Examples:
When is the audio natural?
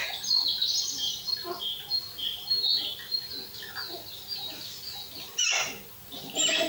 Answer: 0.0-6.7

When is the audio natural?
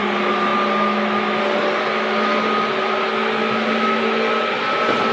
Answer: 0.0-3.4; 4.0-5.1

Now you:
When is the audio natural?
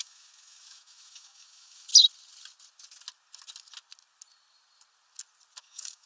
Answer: 1.9-5.6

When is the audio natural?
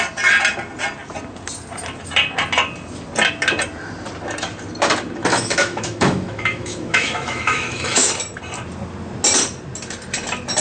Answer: 0.0-5.3; 8.1-10.6